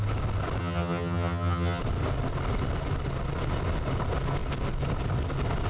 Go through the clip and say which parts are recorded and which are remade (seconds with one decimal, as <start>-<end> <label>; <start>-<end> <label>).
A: 0.0-0.6 recorded; 0.6-1.8 remade; 1.8-5.7 recorded